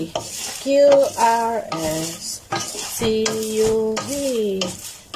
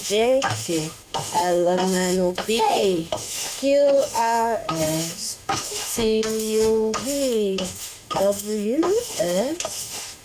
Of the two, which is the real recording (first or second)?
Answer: first